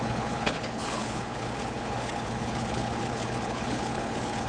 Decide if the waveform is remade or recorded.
remade